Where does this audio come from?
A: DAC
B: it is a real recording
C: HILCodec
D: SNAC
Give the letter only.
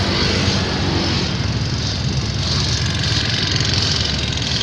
B